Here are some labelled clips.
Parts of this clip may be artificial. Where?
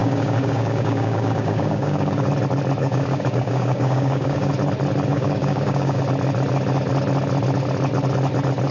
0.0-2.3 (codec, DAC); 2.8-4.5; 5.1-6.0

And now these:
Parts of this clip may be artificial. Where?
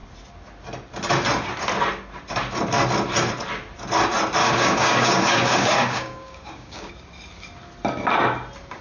4.4-6.9 (codec, DAC)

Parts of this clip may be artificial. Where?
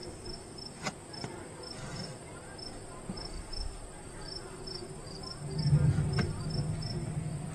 none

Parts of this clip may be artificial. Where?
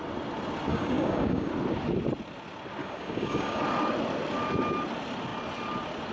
0.7-1.5 (codec, DAC); 2.8-3.6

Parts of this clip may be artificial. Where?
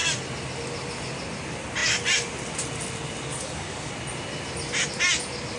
3.3-3.9 (codec, DAC)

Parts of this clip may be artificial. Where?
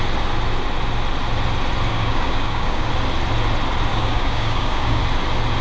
1.9-2.9 (codec, DAC); 3.9-5.0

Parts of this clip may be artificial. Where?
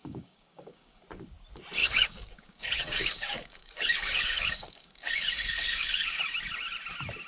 0.0-1.0 (codec, DAC); 1.8-6.2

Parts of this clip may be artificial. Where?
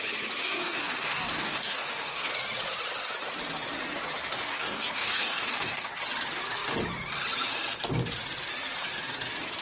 0.4-2.3 (codec, DAC); 4.5-5.9